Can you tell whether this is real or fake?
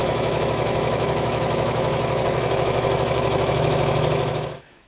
fake